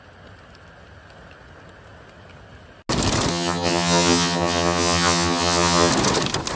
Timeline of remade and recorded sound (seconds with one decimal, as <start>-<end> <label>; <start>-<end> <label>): 0.0-3.3 recorded; 3.3-5.9 remade; 5.9-6.6 recorded